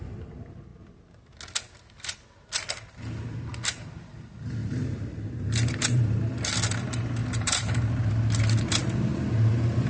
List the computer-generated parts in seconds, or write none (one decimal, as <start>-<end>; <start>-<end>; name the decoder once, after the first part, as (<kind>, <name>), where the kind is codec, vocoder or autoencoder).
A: 4.6-6.2 (vocoder, BigVGAN v2); 7.2-8.1